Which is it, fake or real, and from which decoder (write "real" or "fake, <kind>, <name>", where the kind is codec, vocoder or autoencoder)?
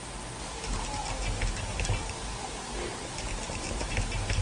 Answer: real